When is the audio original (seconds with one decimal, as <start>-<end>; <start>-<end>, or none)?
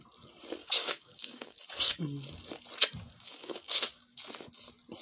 0.0-0.6; 2.0-3.1; 4.2-5.0